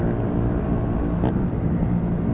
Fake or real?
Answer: real